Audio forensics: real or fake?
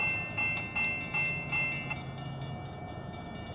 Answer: real